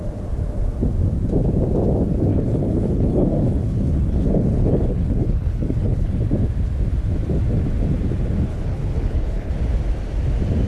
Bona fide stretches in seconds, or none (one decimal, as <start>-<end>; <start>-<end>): 0.0-2.3; 6.1-8.5; 9.5-10.7